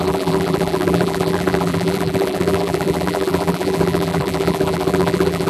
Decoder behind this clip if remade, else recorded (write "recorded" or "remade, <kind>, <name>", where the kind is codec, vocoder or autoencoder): remade, vocoder, BigVGAN v2